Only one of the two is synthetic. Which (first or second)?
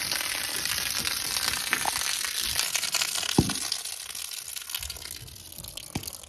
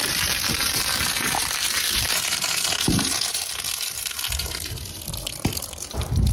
second